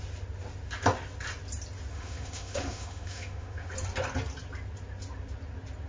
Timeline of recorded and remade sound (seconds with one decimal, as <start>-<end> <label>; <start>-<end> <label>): 0.0-1.9 recorded; 1.9-3.7 remade; 3.7-5.9 recorded